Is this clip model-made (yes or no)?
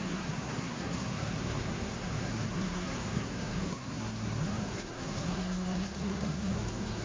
yes